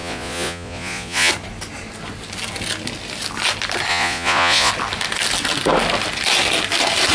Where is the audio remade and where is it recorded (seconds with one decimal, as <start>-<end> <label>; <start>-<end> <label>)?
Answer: 0.0-1.3 remade; 1.3-3.9 recorded; 3.9-4.7 remade; 4.7-7.1 recorded